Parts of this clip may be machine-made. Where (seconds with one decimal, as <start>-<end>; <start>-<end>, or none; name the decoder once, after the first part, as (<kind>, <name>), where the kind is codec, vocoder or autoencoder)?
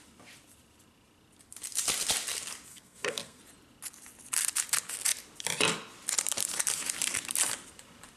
2.7-3.4 (codec, SNAC)